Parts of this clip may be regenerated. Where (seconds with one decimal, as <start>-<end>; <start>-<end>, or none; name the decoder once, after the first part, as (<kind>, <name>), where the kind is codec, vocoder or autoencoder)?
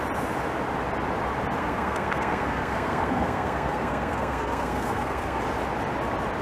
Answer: 1.6-5.4 (codec, SNAC)